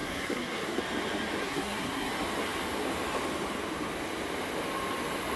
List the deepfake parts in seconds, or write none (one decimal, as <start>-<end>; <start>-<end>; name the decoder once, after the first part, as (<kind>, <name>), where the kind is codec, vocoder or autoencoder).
0.0-0.8 (codec, SNAC); 1.4-2.1